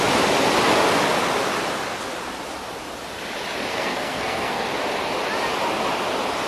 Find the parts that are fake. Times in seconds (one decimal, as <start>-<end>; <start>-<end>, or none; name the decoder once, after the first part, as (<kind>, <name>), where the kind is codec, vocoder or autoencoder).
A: 3.7-4.7 (codec, SNAC)